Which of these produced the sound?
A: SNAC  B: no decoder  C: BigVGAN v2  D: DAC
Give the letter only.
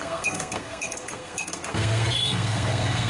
A